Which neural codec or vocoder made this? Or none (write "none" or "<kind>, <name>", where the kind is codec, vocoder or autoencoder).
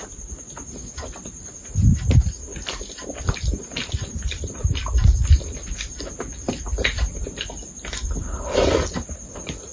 none